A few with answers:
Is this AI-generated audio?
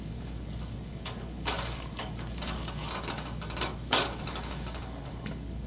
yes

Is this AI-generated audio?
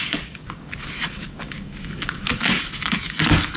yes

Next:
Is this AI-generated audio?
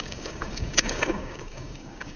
yes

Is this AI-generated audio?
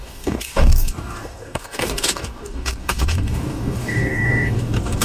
yes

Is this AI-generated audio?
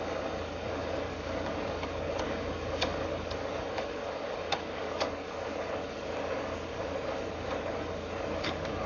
yes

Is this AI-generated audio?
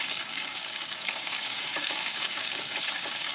yes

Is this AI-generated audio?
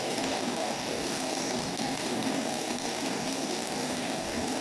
yes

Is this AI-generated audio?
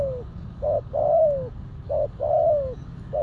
yes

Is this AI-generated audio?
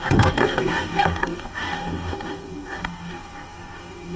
yes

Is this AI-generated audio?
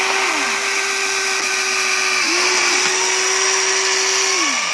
no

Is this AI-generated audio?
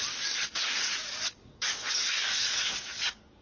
yes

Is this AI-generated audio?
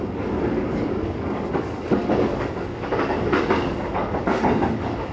yes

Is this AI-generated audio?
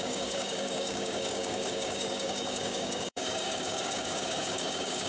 yes